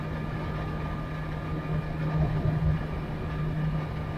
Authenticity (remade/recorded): recorded